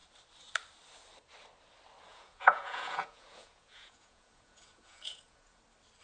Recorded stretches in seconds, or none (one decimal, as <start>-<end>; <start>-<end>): 0.0-2.1; 5.6-6.0